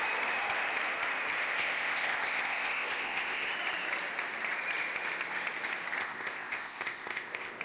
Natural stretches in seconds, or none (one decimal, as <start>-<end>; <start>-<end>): 0.0-1.4; 3.5-6.0